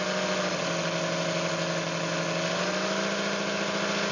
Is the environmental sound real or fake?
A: real